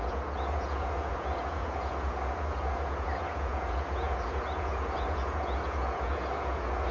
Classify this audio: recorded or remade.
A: remade